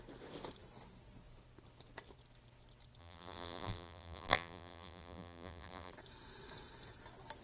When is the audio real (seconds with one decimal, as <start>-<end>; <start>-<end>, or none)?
0.0-3.0; 5.9-7.4